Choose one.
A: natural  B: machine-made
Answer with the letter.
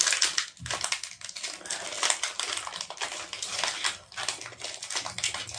A